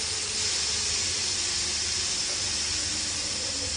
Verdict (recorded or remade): recorded